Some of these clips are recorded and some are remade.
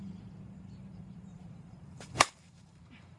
remade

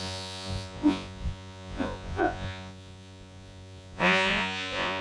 remade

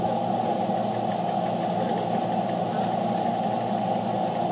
recorded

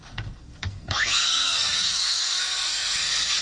remade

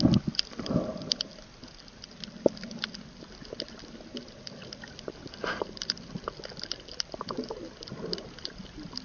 recorded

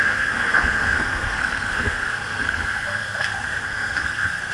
remade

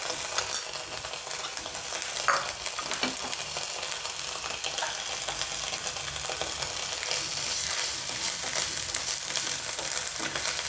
recorded